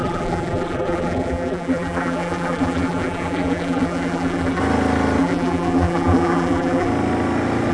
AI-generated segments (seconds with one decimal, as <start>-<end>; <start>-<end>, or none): 0.0-4.6; 5.2-6.9

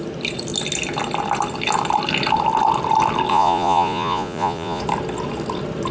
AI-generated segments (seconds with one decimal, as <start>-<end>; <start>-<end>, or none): 3.3-4.8

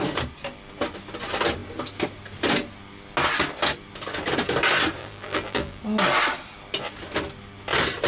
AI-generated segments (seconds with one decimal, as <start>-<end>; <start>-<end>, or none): 5.0-5.8

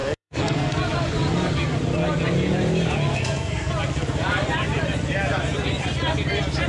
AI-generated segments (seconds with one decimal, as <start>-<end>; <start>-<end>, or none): 0.0-0.8; 3.1-3.7

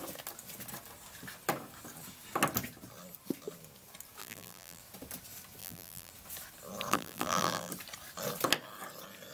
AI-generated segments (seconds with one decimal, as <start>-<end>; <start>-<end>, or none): 4.2-4.8; 5.6-6.1; 6.9-7.7

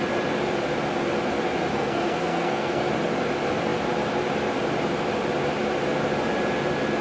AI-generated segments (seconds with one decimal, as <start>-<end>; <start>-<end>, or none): 1.7-2.9